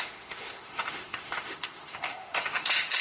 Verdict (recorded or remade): remade